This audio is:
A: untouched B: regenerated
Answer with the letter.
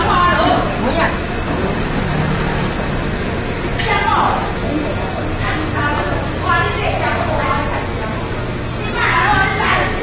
A